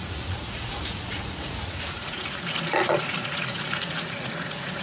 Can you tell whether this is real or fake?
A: fake